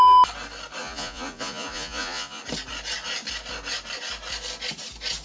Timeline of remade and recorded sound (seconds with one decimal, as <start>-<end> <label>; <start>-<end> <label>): 0.0-0.8 recorded; 0.8-2.4 remade; 2.4-5.2 recorded